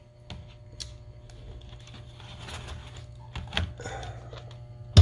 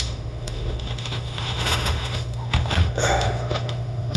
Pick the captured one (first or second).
first